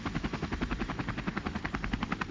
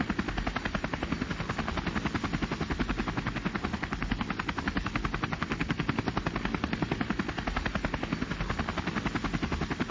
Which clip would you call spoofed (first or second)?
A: first